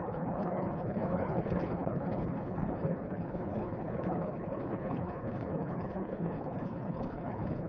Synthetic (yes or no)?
yes